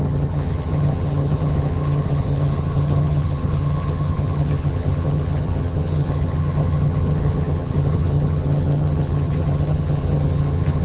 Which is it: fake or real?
fake